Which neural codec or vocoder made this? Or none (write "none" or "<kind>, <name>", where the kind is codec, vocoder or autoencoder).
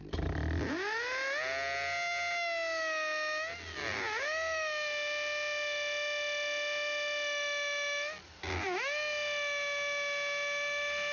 none